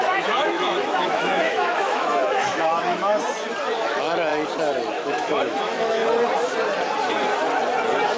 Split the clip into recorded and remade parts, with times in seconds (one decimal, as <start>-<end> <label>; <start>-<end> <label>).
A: 0.0-3.1 remade; 3.1-3.8 recorded; 3.8-4.3 remade; 4.3-4.9 recorded; 4.9-6.0 remade; 6.0-8.2 recorded